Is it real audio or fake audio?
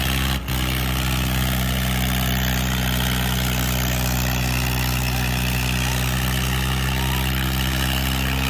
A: real